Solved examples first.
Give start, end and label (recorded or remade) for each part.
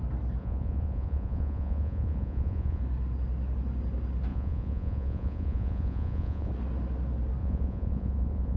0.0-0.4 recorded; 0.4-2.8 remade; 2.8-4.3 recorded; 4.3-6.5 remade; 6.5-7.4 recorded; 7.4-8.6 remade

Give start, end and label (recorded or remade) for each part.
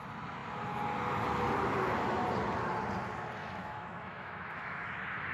0.0-3.4 recorded; 3.4-4.8 remade; 4.8-5.3 recorded